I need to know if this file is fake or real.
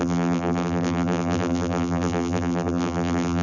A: fake